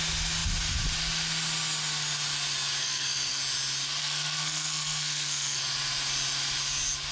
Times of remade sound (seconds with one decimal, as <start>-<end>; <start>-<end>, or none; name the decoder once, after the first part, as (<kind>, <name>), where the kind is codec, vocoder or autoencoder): 2.8-3.4 (codec, SNAC); 4.0-5.6